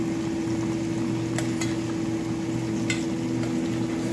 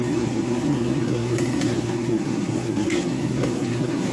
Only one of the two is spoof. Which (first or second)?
second